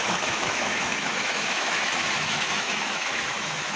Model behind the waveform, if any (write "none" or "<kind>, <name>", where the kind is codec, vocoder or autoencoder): autoencoder, DAC-VAE